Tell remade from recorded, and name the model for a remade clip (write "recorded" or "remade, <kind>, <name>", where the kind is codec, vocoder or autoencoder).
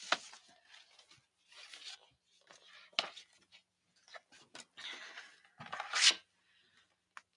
recorded